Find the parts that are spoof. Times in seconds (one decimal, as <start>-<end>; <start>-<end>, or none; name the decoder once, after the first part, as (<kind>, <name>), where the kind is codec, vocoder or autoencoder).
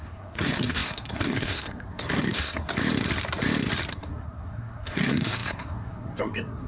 0.0-2.7 (codec, SNAC); 3.9-6.7